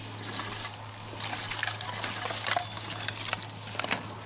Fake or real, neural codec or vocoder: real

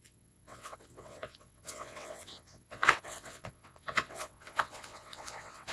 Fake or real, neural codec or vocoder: fake, vocoder, WaveNeXt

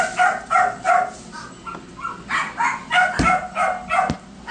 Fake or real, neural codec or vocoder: real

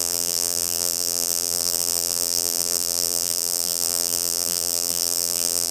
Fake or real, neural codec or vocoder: fake, vocoder, BigVGAN v2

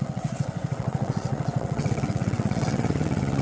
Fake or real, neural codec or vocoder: fake, vocoder, WaveNeXt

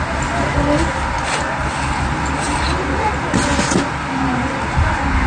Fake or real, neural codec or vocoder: real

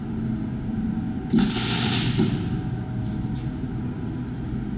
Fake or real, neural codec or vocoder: real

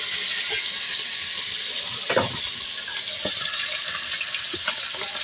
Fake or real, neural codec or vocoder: real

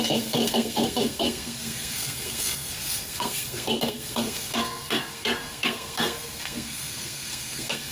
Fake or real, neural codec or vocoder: fake, codec, SNAC